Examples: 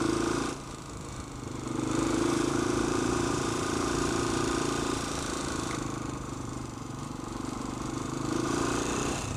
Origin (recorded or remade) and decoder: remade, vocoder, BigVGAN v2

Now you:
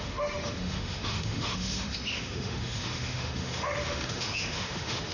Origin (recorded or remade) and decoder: remade, autoencoder, DAC-VAE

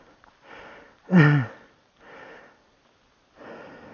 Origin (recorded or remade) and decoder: recorded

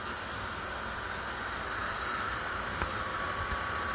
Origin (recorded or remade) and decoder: recorded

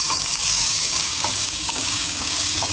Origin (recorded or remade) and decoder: remade, codec, DAC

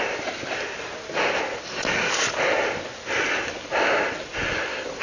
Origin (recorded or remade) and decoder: recorded